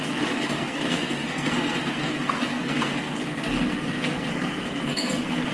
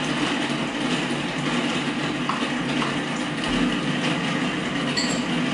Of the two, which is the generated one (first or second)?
first